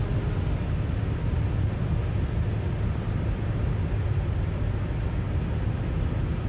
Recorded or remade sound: recorded